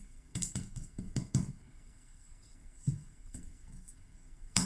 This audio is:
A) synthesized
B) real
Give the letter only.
A